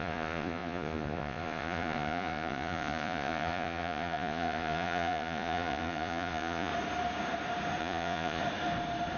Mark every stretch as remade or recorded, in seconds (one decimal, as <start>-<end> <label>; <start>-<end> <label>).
0.0-6.7 remade; 6.7-7.8 recorded; 7.8-8.4 remade; 8.4-9.2 recorded